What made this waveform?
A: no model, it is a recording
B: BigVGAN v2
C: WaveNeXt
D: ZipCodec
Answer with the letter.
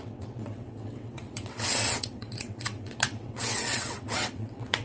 C